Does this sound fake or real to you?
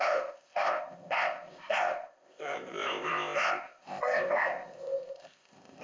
fake